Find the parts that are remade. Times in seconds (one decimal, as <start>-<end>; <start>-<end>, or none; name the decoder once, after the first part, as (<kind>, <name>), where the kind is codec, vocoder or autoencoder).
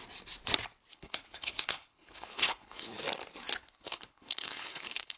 0.9-3.0 (codec, HILCodec); 3.6-5.2